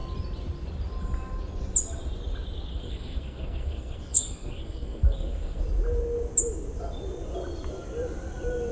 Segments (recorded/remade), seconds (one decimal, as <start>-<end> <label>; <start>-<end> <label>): 0.0-2.7 recorded; 2.7-5.6 remade; 5.6-8.7 recorded